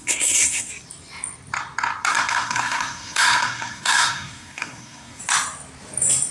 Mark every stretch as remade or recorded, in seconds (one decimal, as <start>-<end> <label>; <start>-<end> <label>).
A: 0.0-0.7 remade; 0.7-2.1 recorded; 2.1-5.2 remade; 5.2-6.3 recorded